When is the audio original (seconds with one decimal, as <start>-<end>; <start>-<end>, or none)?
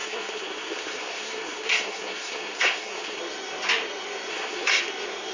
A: 3.2-4.3; 4.8-5.3